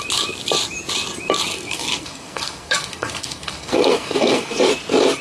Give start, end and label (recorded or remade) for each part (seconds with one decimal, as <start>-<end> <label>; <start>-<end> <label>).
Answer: 0.0-1.5 recorded; 1.5-4.6 remade; 4.6-5.2 recorded